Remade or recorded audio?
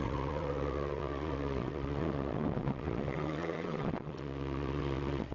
remade